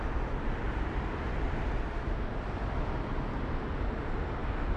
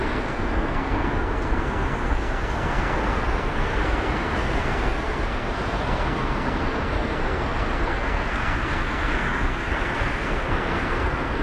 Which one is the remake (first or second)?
second